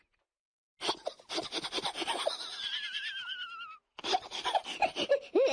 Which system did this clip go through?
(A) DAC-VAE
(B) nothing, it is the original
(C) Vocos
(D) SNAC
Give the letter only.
B